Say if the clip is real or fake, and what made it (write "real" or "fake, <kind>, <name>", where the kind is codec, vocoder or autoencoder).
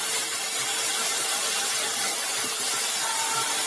real